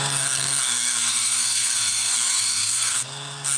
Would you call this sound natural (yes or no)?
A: no